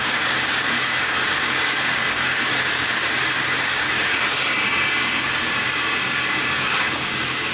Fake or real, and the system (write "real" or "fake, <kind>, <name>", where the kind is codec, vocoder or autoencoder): fake, codec, DAC